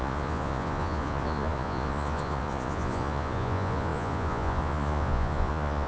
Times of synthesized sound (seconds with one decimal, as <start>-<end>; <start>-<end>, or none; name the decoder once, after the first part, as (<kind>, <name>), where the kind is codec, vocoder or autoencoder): 0.0-5.9 (vocoder, Vocos)